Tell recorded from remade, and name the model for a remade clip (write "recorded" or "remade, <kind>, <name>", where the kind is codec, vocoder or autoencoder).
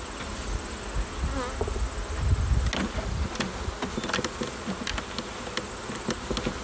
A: recorded